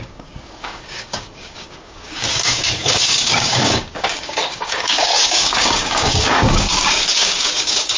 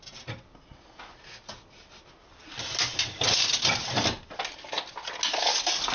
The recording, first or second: second